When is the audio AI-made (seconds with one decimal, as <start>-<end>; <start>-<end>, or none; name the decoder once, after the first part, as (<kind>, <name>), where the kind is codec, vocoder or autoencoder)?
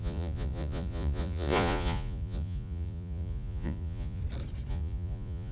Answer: 0.0-4.2 (vocoder, Vocos); 4.7-5.5